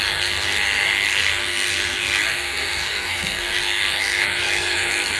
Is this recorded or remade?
remade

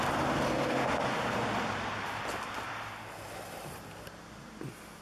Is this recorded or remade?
recorded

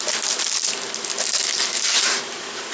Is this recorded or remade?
recorded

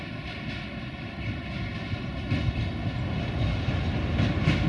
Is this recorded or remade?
recorded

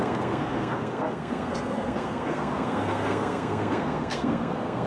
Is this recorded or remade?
remade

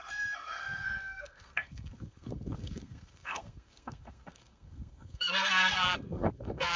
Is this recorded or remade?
remade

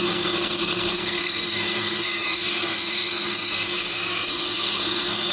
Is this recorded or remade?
remade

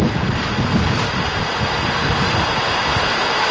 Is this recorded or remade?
recorded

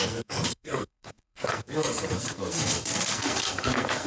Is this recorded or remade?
remade